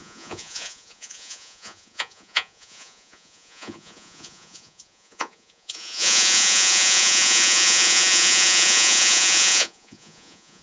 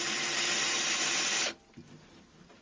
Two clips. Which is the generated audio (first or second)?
first